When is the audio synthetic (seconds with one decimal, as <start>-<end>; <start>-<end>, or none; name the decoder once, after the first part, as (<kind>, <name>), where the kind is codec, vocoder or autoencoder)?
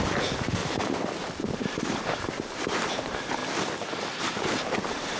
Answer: 0.0-0.6 (vocoder, BigVGAN v2); 1.2-3.4; 4.4-5.2